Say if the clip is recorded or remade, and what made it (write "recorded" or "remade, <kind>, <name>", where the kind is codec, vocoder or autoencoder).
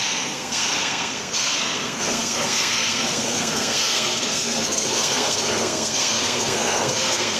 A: remade, codec, SNAC